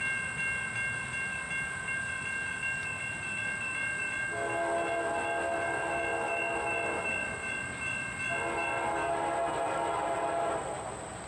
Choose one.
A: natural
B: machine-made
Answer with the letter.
A